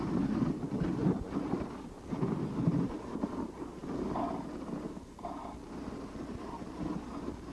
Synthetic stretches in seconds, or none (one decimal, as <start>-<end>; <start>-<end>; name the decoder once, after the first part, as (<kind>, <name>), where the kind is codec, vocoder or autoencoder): none